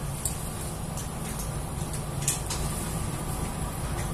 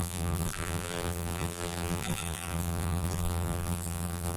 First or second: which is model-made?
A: second